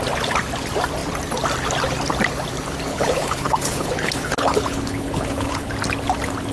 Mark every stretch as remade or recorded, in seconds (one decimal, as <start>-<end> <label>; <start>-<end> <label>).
0.0-2.9 recorded; 2.9-5.7 remade; 5.7-6.5 recorded